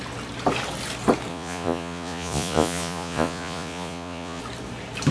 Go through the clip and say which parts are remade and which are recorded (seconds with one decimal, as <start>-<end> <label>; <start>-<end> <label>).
0.0-1.3 recorded; 1.3-4.4 remade; 4.4-5.1 recorded